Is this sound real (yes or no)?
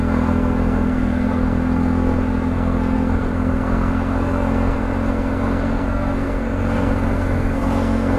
no